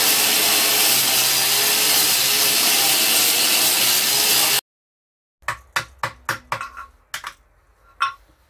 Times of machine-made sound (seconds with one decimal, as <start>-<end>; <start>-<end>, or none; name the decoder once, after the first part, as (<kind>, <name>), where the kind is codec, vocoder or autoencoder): 7.7-8.5 (vocoder, BigVGAN v2)

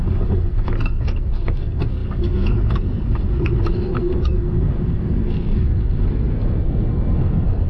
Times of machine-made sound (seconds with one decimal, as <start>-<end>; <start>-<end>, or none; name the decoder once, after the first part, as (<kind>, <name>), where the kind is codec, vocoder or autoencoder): 0.0-7.7 (codec, SNAC)

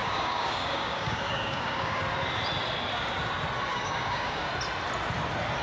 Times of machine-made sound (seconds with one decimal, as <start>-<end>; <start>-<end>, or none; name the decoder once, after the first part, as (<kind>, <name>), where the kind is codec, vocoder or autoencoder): 0.0-2.0 (codec, DAC); 3.7-4.5

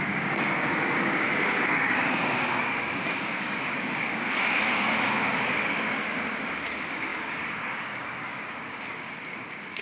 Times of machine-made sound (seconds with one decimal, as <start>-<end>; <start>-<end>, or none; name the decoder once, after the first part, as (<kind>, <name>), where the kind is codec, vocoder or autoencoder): 0.0-9.8 (codec, DAC)

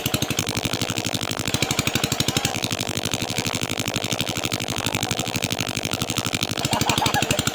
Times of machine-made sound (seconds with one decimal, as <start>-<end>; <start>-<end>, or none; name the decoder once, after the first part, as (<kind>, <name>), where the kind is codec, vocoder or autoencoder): 0.4-1.5 (vocoder, BigVGAN v2); 2.5-6.6